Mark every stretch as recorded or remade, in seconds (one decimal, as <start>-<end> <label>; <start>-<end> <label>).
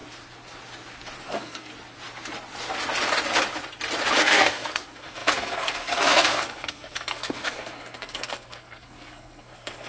0.0-1.2 recorded; 1.2-1.7 remade; 1.7-4.2 recorded; 4.2-9.9 remade